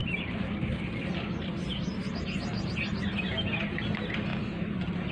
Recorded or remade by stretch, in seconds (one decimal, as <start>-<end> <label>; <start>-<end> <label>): 0.0-4.3 recorded; 4.3-5.1 remade